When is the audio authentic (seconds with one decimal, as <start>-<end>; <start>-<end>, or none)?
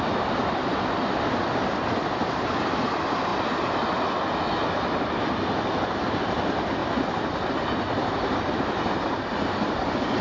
0.0-10.2